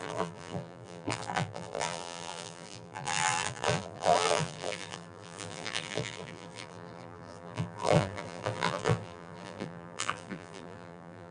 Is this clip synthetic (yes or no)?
yes